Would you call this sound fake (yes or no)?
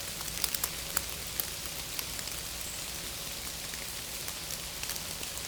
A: no